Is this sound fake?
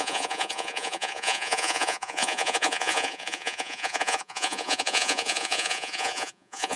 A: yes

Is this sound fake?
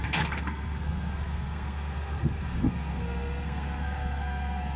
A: yes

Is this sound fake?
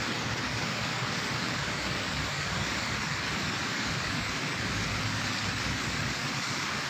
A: yes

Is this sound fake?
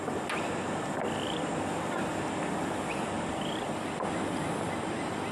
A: no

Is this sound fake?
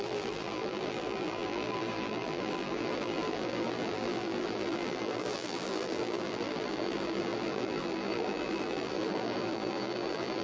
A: yes